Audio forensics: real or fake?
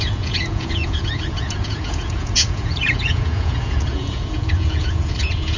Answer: fake